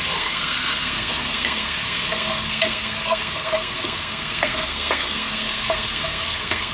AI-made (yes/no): yes